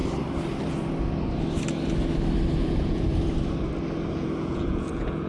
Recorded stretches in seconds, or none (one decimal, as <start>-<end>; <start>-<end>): 0.0-2.6; 3.1-4.1